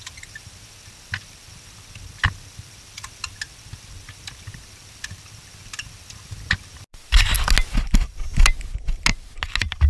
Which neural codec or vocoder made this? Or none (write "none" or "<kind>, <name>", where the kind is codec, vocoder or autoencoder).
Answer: none